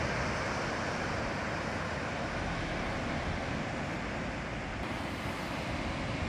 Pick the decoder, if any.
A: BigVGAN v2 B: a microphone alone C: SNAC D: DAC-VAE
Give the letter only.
B